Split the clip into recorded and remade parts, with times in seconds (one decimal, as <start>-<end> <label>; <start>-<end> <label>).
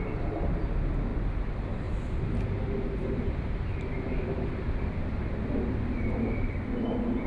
0.0-7.3 recorded